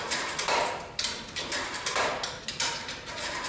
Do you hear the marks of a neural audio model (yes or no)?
yes